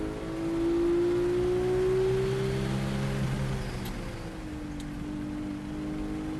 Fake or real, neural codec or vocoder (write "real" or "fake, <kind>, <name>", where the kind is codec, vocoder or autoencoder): real